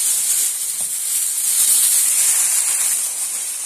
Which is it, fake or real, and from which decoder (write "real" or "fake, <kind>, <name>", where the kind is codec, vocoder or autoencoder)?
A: real